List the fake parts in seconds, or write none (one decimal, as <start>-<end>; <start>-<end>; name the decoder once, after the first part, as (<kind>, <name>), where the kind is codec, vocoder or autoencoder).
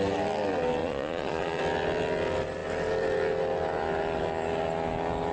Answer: 0.8-1.6 (vocoder, Vocos)